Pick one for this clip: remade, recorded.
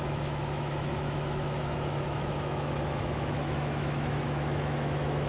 remade